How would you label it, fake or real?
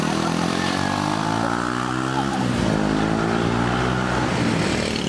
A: real